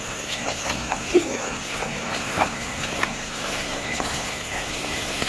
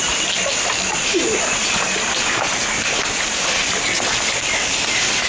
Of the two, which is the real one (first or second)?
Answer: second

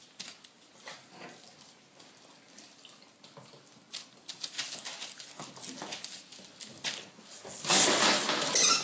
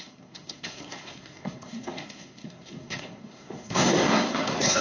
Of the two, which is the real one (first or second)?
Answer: first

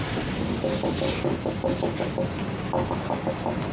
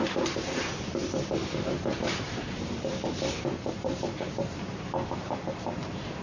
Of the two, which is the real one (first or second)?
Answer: first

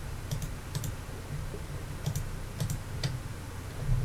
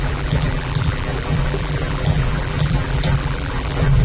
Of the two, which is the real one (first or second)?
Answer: first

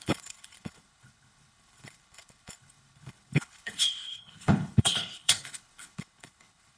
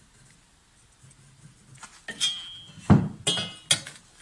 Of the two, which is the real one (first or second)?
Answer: second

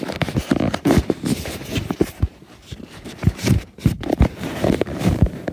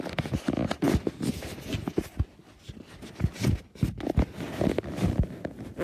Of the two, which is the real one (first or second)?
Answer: second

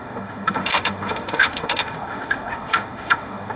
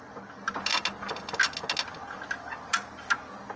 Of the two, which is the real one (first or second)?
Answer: second